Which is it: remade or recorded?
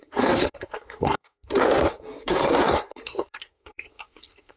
remade